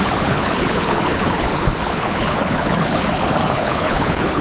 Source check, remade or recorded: remade